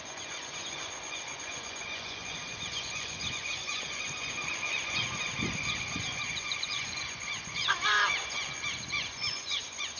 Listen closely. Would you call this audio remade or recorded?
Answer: remade